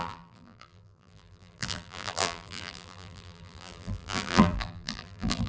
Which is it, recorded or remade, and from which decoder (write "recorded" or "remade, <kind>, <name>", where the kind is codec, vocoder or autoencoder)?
remade, vocoder, BigVGAN v2